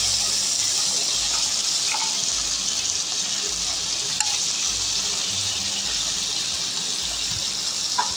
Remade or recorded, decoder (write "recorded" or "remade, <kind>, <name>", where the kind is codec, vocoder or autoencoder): recorded